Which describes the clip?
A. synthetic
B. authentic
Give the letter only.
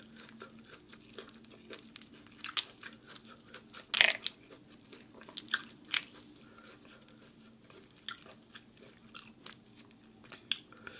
B